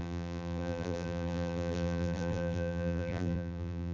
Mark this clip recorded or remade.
remade